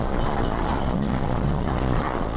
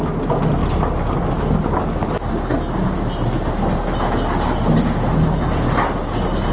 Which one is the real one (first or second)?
second